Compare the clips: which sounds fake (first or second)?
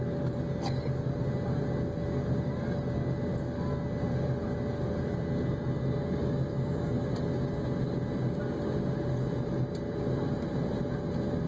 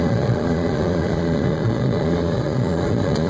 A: second